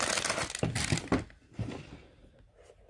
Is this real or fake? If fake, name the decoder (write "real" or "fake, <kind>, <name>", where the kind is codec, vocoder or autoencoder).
real